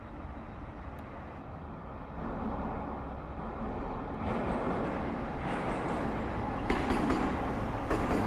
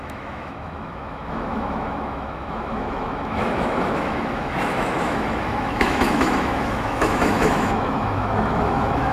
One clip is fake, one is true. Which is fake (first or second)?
second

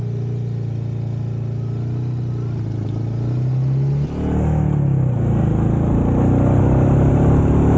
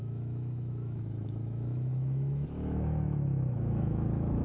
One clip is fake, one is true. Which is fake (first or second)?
second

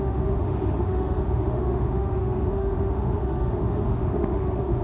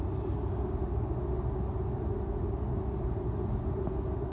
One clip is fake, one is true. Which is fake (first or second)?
first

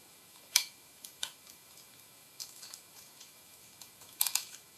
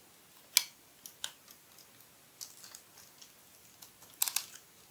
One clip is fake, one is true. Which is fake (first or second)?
first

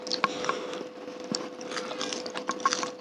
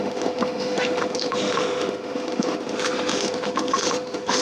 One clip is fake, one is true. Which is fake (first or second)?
second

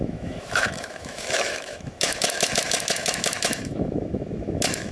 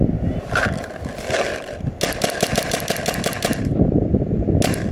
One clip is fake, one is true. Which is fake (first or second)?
first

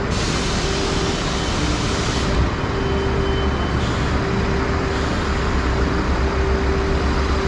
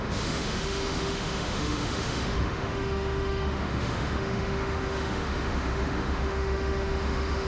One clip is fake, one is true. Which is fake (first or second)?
second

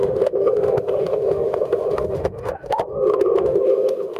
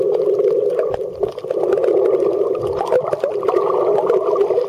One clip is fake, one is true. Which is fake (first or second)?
first